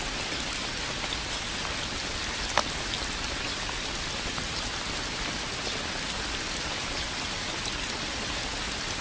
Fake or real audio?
real